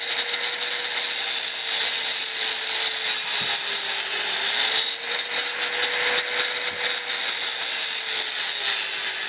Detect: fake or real real